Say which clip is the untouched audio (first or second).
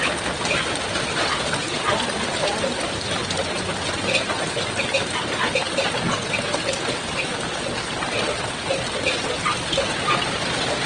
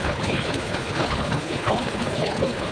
first